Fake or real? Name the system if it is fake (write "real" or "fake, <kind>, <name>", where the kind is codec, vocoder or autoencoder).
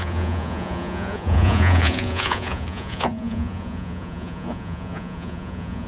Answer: fake, vocoder, Vocos